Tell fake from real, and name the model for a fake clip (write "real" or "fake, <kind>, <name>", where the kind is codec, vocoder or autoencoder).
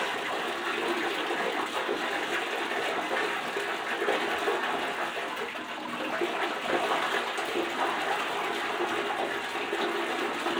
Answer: real